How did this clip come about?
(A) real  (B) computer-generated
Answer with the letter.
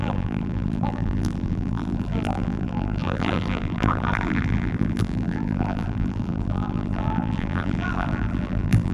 B